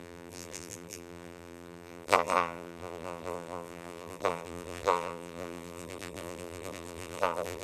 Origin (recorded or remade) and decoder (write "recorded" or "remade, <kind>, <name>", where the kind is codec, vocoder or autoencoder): remade, vocoder, BigVGAN v2